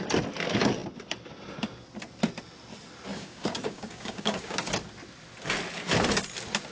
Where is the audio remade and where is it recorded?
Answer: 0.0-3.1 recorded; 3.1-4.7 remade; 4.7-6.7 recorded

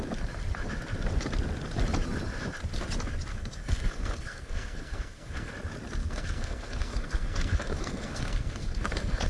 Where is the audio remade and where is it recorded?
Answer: 0.0-3.3 recorded; 3.3-5.5 remade; 5.5-6.0 recorded; 6.0-9.3 remade

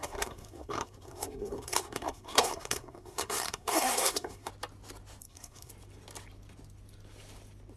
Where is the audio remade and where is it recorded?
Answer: 0.0-4.5 remade; 4.5-5.2 recorded; 5.2-5.7 remade; 5.7-7.8 recorded

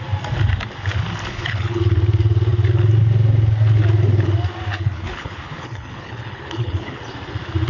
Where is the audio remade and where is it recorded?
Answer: 0.0-1.3 recorded; 1.3-1.8 remade; 1.8-4.7 recorded; 4.7-7.0 remade; 7.0-7.7 recorded